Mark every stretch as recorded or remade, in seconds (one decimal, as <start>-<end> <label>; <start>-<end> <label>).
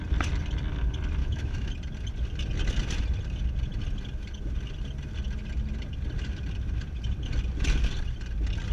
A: 0.0-1.2 recorded; 1.2-1.7 remade; 1.7-8.7 recorded